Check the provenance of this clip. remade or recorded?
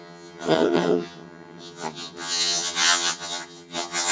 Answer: remade